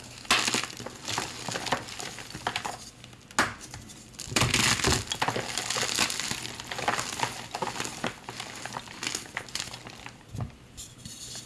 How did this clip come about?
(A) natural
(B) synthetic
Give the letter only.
A